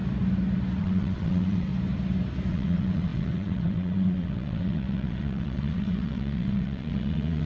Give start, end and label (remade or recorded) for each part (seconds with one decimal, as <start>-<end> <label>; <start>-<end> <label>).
0.0-0.8 recorded; 0.8-1.7 remade; 1.7-2.5 recorded; 2.5-7.5 remade